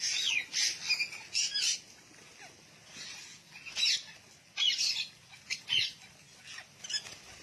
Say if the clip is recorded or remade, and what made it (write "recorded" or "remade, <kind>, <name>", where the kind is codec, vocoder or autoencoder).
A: recorded